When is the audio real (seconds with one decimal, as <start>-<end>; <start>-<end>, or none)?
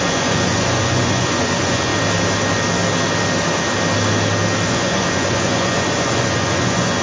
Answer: 1.9-4.7